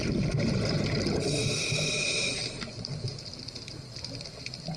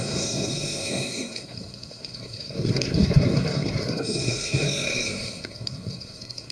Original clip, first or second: first